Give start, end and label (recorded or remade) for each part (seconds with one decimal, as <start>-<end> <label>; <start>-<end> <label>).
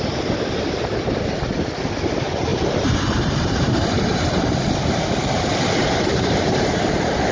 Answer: 0.0-2.5 recorded; 2.5-7.3 remade